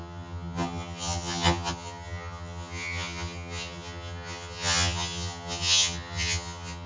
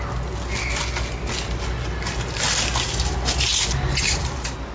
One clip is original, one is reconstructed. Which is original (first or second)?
second